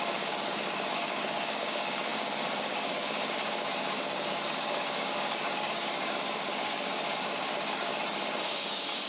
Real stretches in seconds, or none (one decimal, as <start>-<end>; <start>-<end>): 7.9-8.5